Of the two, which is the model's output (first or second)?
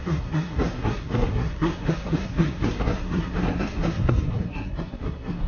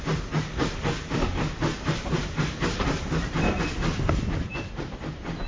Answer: first